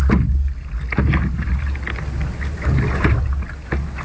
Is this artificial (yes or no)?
no